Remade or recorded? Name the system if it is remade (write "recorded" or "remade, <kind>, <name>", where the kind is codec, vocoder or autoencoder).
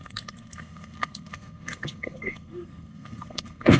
remade, codec, SNAC